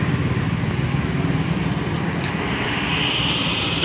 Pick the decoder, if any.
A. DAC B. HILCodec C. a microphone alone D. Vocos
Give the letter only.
C